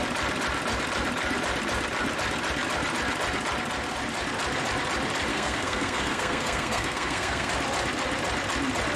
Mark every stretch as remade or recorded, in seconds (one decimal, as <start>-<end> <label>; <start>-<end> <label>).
0.0-5.3 recorded; 5.3-7.5 remade; 7.5-9.0 recorded